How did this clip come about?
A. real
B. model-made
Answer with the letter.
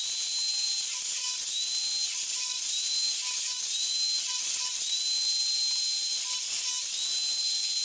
A